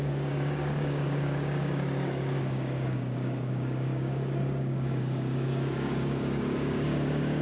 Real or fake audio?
fake